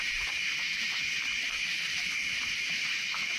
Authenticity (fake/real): real